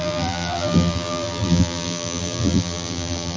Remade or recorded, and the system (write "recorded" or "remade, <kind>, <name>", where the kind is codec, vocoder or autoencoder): remade, vocoder, BigVGAN v2